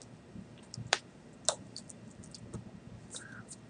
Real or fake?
real